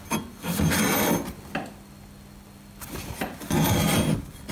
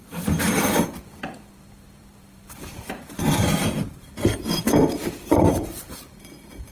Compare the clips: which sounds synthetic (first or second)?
second